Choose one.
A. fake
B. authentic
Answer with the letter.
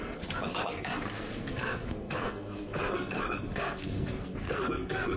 A